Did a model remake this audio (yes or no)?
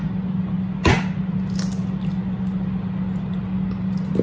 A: no